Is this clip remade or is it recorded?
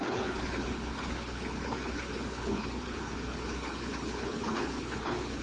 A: remade